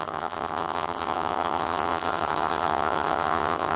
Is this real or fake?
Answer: fake